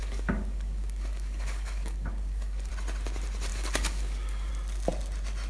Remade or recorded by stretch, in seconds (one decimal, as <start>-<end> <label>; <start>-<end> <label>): 0.0-2.7 remade; 2.7-3.5 recorded; 3.5-4.5 remade; 4.5-5.5 recorded